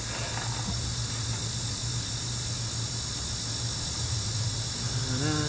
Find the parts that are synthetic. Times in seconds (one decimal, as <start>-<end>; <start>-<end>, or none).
none